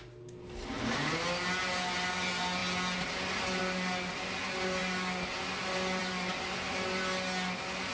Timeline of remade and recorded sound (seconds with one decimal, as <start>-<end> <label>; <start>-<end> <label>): 0.0-7.9 recorded